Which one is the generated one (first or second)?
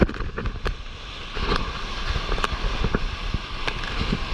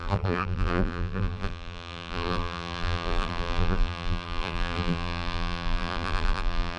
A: second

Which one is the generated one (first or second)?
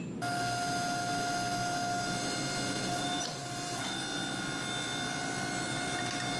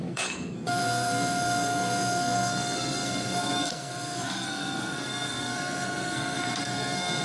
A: second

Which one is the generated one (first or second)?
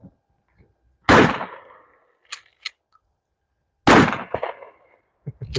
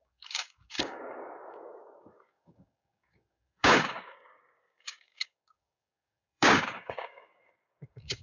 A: second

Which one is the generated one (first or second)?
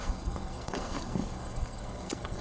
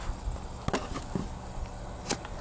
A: first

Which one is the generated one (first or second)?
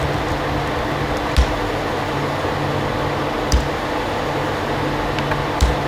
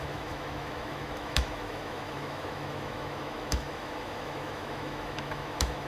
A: second